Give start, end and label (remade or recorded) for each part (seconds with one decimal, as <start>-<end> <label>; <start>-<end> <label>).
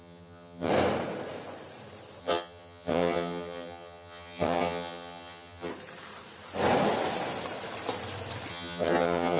0.0-0.7 remade; 0.7-2.2 recorded; 2.2-5.7 remade; 5.7-8.5 recorded; 8.5-9.4 remade